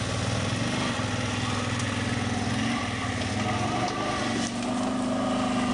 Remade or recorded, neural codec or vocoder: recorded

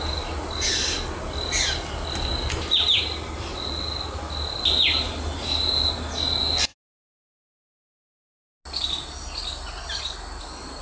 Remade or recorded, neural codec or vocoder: recorded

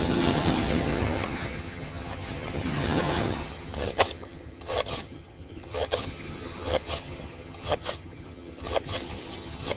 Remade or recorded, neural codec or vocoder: remade, vocoder, HiFi-GAN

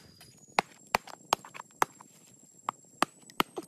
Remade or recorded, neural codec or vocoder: recorded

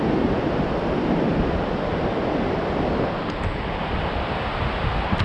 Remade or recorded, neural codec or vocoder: recorded